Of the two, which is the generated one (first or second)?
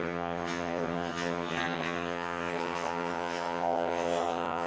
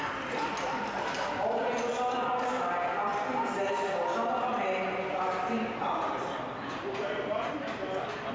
first